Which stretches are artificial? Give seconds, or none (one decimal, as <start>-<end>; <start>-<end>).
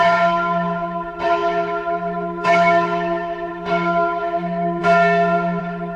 0.0-4.8; 5.6-6.0